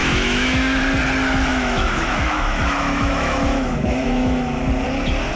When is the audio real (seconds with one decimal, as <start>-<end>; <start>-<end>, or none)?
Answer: 0.8-1.5; 4.7-5.4